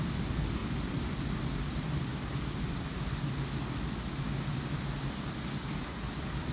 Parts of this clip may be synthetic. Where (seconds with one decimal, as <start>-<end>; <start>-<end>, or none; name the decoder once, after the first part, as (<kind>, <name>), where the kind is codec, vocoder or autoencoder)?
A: none